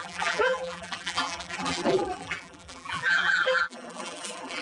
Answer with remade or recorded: remade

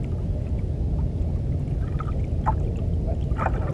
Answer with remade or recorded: recorded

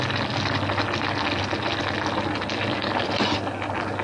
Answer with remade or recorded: recorded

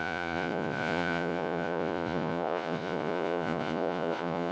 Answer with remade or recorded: remade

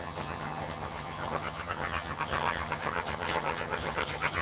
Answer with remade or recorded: remade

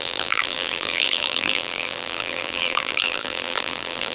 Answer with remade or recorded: remade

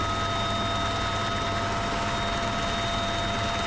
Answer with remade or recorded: recorded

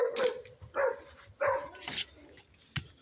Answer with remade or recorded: recorded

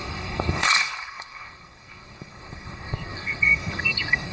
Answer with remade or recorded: remade